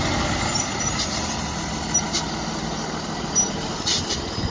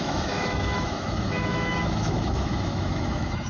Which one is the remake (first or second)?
second